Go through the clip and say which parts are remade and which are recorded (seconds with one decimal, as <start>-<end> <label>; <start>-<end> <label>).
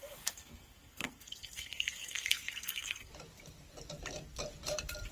0.0-3.1 remade; 3.1-5.1 recorded